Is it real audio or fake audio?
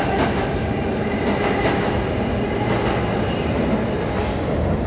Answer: real